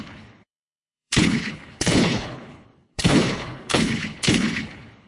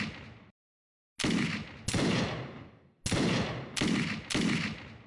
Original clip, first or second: second